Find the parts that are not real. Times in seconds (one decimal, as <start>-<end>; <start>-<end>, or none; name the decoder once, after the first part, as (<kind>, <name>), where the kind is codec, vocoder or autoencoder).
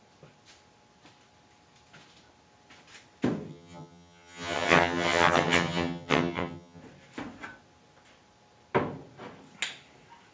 3.5-6.8 (vocoder, HiFi-GAN)